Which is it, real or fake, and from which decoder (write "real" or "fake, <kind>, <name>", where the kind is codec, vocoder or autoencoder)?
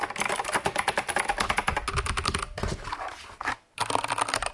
real